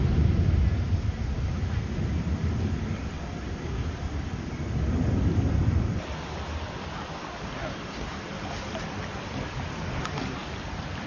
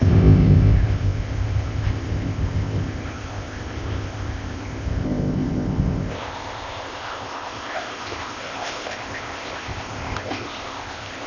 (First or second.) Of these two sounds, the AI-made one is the second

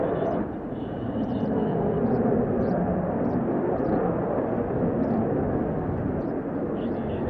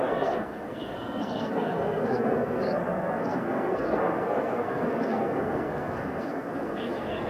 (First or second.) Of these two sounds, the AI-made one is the second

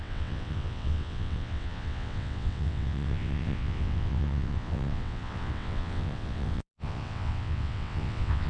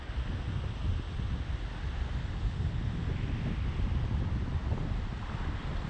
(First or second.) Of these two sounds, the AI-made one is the first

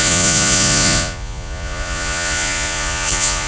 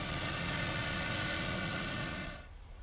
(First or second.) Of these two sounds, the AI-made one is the first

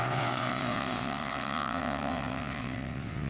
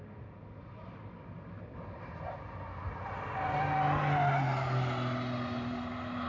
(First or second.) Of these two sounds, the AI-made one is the first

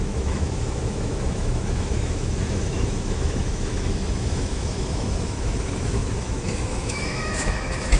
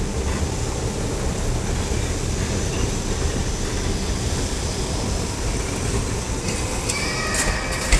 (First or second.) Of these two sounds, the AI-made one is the first